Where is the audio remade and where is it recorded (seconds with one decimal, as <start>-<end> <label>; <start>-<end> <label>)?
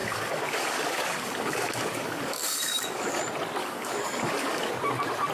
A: 0.0-3.2 remade; 3.2-3.6 recorded; 3.6-4.7 remade; 4.7-5.3 recorded